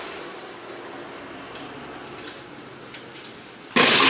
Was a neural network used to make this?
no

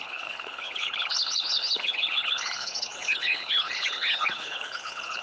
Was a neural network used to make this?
yes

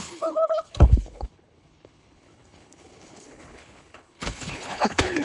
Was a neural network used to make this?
yes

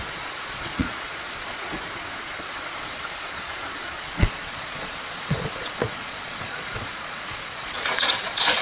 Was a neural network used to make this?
yes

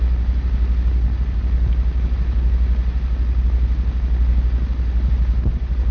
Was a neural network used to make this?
no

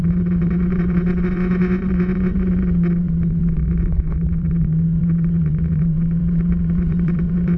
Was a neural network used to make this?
yes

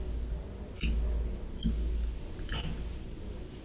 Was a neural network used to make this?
no